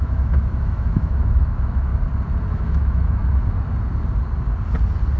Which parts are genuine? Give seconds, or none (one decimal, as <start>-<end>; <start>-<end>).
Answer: 1.9-2.5; 3.2-5.2